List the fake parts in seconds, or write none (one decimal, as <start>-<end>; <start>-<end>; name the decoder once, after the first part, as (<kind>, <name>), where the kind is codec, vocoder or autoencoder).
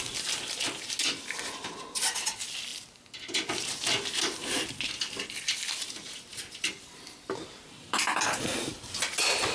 6.3-8.5 (vocoder, BigVGAN v2)